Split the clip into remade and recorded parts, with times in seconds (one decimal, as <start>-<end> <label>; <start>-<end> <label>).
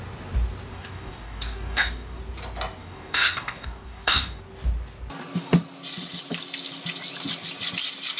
0.0-0.7 recorded; 0.7-2.2 remade; 2.2-2.8 recorded; 2.8-4.4 remade; 4.4-8.2 recorded